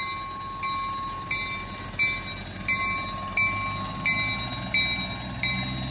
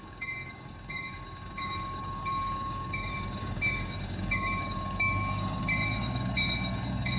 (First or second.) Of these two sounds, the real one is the first